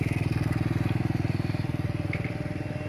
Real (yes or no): yes